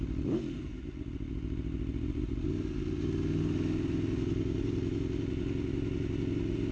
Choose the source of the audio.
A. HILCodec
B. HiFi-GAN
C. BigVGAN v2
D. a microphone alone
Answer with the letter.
D